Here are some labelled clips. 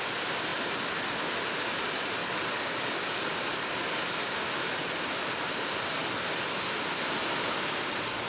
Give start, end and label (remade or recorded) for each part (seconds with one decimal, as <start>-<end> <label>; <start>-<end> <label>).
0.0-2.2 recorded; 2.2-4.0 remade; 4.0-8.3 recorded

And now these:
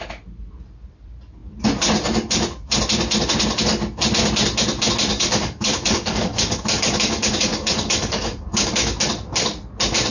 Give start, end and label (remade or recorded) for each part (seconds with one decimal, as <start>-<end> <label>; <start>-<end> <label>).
0.0-5.1 recorded; 5.1-9.0 remade; 9.0-10.1 recorded

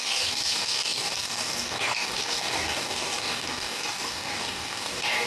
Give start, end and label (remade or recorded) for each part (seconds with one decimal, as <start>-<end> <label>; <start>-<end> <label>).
0.0-5.3 remade

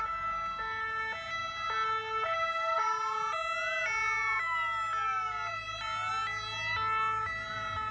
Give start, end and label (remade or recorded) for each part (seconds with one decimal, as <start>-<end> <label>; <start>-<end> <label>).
0.0-7.9 recorded

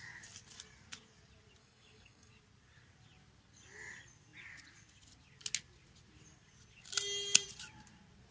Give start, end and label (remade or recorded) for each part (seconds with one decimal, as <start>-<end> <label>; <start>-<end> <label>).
0.0-1.6 recorded; 1.6-2.3 remade; 2.3-8.3 recorded

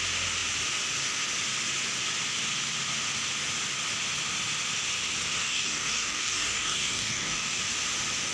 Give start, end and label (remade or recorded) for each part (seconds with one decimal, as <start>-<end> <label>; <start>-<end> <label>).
0.0-5.4 recorded; 5.4-7.6 remade; 7.6-8.3 recorded

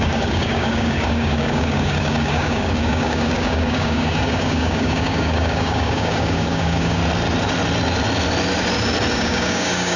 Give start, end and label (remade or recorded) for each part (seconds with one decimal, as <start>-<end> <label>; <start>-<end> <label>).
0.0-7.0 remade; 7.0-9.1 recorded; 9.1-10.0 remade